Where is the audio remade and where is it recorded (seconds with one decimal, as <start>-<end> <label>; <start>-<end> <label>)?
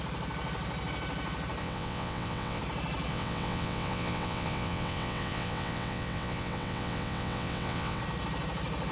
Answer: 0.0-1.6 recorded; 1.6-2.6 remade; 2.6-3.1 recorded; 3.1-8.0 remade; 8.0-8.9 recorded